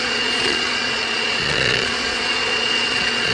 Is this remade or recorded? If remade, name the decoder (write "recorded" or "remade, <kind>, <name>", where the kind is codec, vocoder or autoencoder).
remade, vocoder, Vocos